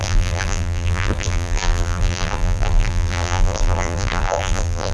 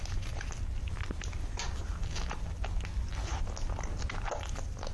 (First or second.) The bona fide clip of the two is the second